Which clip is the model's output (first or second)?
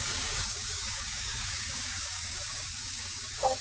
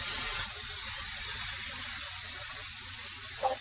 first